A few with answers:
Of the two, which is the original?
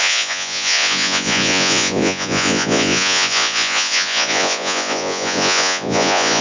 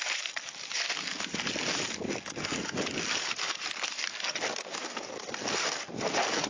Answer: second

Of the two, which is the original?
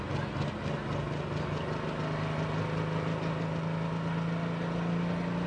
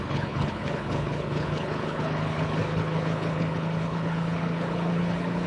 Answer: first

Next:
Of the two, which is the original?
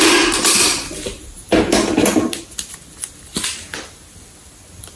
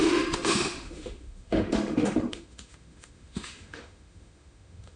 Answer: first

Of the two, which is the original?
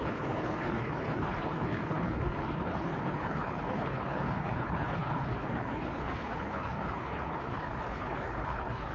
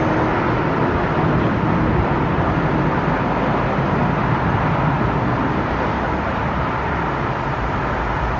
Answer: second